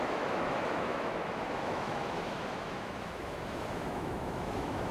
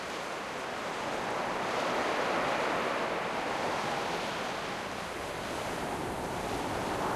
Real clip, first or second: second